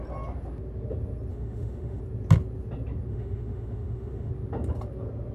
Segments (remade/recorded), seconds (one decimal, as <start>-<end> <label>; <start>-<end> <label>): 0.0-1.3 recorded; 1.3-2.0 remade; 2.0-3.1 recorded; 3.1-4.3 remade; 4.3-5.3 recorded